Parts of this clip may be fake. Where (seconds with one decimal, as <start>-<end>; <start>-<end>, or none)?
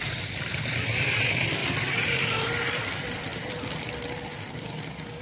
1.6-2.8